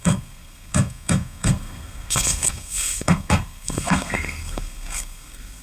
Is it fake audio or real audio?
fake